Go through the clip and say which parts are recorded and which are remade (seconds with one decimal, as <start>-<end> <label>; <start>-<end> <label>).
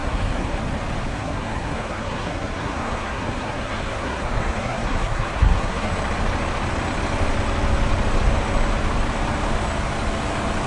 0.0-0.6 remade; 0.6-1.1 recorded; 1.1-5.9 remade; 5.9-10.7 recorded